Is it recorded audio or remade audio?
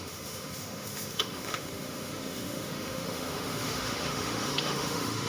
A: remade